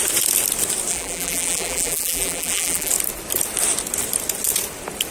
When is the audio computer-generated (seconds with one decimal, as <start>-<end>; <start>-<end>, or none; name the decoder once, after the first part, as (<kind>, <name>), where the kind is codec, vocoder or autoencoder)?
0.9-2.9 (vocoder, BigVGAN v2)